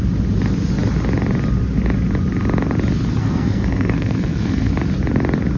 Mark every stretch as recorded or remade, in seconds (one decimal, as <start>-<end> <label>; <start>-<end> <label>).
0.0-3.2 recorded; 3.2-4.7 remade; 4.7-5.6 recorded